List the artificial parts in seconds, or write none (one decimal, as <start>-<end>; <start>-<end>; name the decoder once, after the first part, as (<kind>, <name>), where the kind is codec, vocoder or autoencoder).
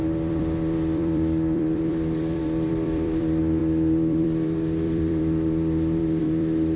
0.0-6.8 (vocoder, BigVGAN v2)